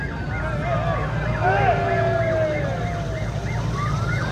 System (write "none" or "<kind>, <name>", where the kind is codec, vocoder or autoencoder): none